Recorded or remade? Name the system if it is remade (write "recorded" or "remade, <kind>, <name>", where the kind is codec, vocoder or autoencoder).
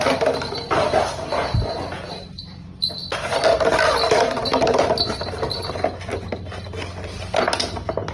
recorded